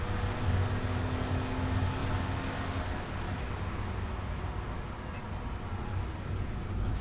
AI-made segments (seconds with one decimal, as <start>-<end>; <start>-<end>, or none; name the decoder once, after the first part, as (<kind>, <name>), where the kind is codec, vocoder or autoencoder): none